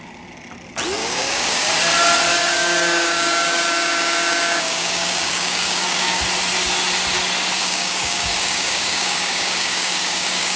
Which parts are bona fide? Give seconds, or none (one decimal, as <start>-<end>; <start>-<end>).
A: 0.0-1.0; 1.7-2.3; 6.2-7.6

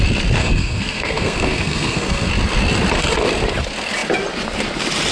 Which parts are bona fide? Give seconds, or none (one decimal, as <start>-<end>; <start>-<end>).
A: 0.0-0.4; 2.3-5.1

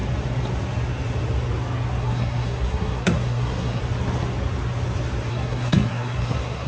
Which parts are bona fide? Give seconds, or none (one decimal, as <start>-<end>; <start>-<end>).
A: 0.0-2.0; 3.8-5.3

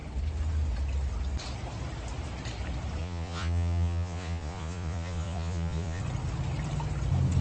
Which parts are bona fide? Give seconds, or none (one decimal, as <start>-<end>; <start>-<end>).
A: 0.0-3.0; 6.0-7.4

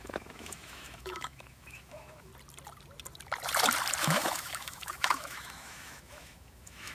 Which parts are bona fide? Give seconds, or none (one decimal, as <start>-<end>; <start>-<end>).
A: 2.3-4.0